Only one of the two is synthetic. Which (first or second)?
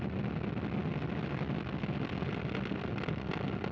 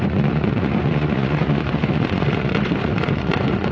second